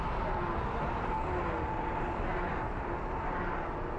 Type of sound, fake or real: real